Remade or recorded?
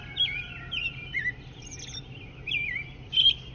recorded